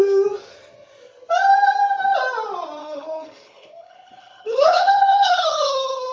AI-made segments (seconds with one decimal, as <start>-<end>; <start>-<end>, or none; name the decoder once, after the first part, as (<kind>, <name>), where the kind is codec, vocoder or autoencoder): 2.8-6.1 (codec, HILCodec)